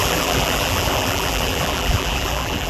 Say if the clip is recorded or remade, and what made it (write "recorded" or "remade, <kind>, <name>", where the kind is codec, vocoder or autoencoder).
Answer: remade, vocoder, BigVGAN v2